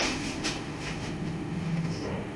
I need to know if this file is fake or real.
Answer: fake